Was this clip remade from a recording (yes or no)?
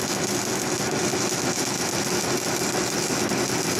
no